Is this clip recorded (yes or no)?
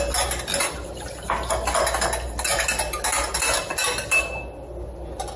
yes